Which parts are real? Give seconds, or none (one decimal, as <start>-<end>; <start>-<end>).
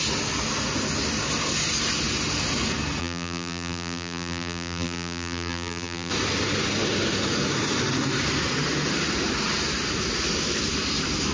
0.0-3.0; 6.1-11.3